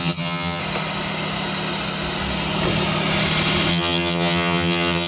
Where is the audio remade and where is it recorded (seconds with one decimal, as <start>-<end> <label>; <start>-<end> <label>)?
0.0-0.6 remade; 0.6-3.7 recorded; 3.7-5.1 remade